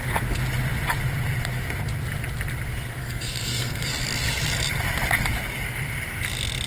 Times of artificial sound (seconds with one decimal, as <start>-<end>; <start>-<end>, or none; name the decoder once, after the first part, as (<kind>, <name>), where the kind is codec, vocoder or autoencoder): 3.0-3.9 (codec, SNAC)